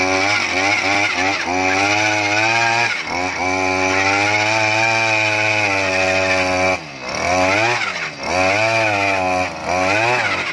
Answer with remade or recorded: recorded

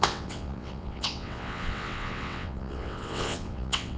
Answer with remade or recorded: remade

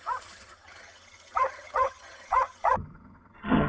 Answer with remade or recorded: remade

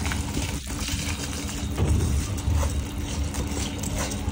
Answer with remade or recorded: recorded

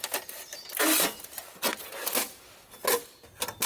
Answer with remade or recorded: recorded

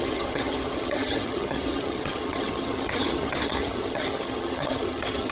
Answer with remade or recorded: remade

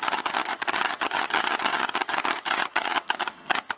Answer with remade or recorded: remade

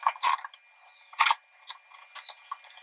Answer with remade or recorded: recorded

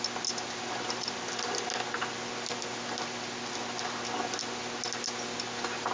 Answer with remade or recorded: recorded